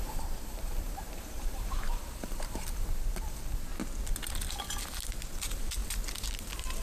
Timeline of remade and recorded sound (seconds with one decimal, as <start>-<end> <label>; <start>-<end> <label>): 0.0-3.7 remade; 3.7-5.2 recorded; 5.2-5.8 remade; 5.8-6.8 recorded